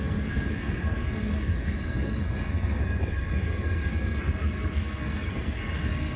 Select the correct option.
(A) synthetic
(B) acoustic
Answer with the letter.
A